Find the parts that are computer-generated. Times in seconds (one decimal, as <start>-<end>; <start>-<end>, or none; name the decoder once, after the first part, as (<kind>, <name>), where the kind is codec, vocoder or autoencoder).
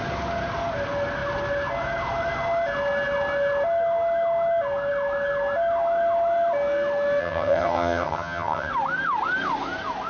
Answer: 7.2-8.7 (vocoder, HiFi-GAN)